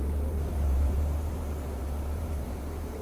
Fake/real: fake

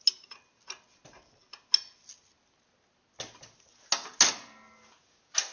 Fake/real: real